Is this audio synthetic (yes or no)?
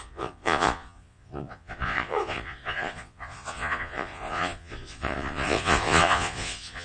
yes